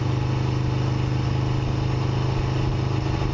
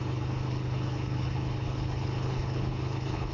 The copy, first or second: second